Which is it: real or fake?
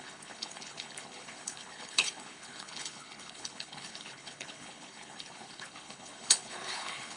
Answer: fake